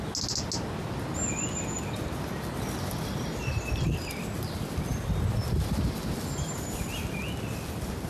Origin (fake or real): real